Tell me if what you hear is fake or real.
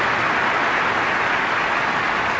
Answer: real